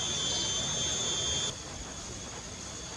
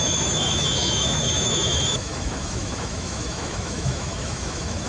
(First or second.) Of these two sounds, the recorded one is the first